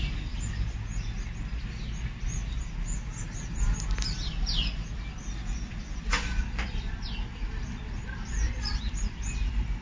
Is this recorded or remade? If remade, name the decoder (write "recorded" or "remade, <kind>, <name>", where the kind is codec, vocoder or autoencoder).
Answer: recorded